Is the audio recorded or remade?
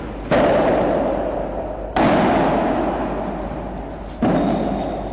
recorded